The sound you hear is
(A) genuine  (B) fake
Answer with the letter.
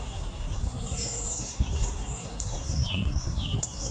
B